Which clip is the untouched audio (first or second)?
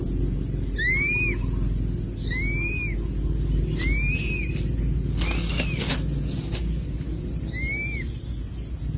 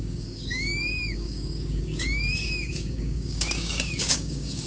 first